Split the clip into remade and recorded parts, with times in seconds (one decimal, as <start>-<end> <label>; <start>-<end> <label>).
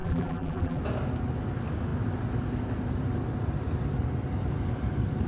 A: 0.0-0.8 remade; 0.8-5.3 recorded